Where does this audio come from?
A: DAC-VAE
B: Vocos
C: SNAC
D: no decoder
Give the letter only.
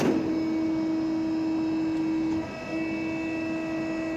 D